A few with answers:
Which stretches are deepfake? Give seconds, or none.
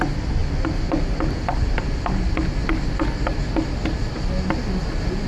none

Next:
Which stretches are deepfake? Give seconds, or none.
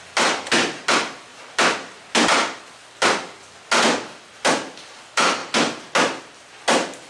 none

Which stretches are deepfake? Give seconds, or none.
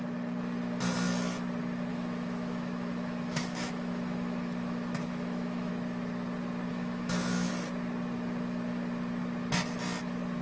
1.9-5.7 (autoencoder, DAC-VAE); 6.7-7.5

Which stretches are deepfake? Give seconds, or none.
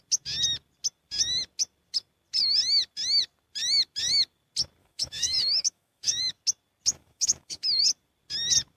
4.8-6.2 (autoencoder, DAC-VAE); 6.9-7.8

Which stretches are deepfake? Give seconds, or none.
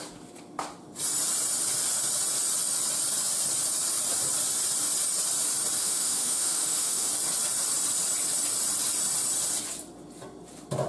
5.8-7.1 (autoencoder, DAC-VAE)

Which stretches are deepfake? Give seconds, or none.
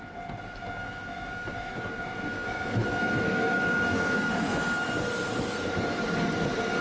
0.8-1.8 (autoencoder, DAC-VAE); 2.3-4.3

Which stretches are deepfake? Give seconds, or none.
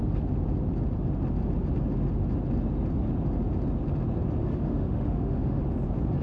4.4-5.6 (autoencoder, DAC-VAE)